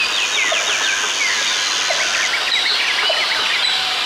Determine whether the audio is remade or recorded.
recorded